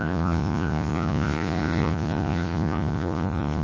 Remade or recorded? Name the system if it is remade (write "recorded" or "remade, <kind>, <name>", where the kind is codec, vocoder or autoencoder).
remade, vocoder, Vocos